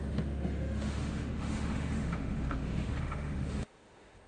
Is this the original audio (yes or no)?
no